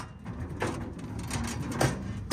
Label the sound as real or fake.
real